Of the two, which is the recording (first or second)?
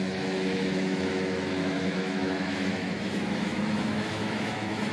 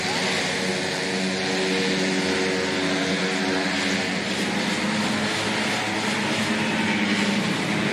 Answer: second